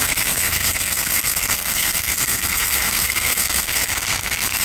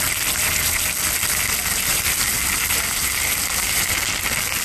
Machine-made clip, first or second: first